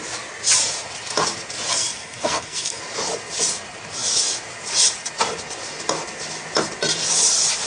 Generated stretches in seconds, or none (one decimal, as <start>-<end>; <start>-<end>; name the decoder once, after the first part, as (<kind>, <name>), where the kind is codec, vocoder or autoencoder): 1.7-2.8 (codec, SNAC)